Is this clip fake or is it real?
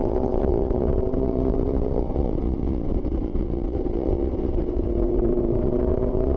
fake